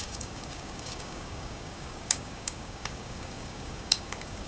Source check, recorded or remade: remade